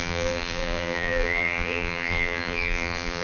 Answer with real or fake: fake